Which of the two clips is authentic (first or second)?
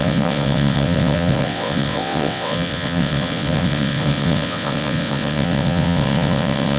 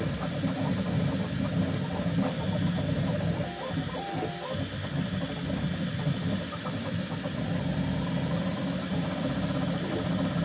second